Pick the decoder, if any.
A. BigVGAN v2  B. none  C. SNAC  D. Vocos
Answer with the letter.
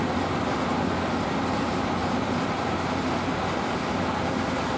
B